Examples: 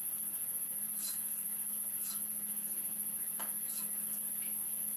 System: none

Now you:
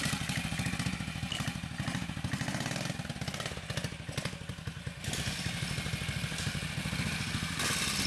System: none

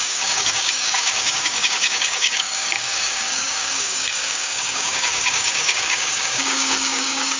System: codec, DAC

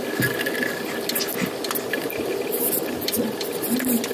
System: none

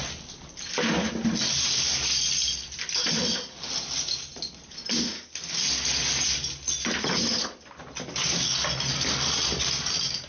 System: none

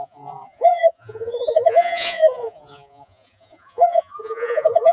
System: vocoder, Vocos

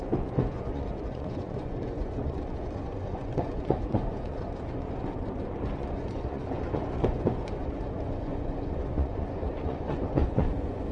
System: vocoder, Vocos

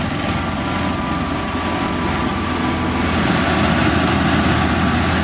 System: none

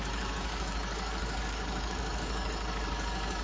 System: codec, DAC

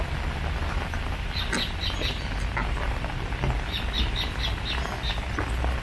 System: none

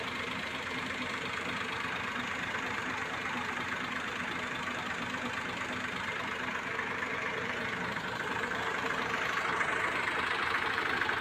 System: vocoder, BigVGAN v2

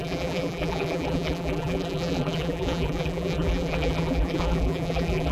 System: vocoder, BigVGAN v2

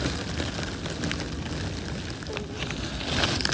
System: none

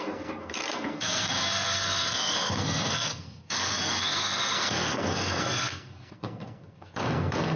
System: codec, SNAC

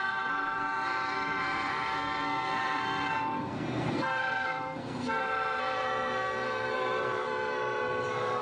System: codec, SNAC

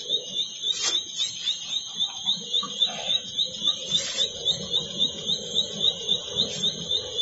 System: vocoder, Vocos